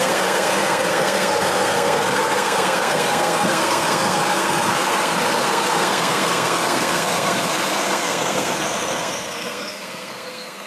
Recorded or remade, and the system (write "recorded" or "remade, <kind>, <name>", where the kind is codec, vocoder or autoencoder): remade, codec, SNAC